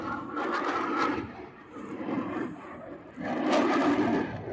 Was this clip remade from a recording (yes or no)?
yes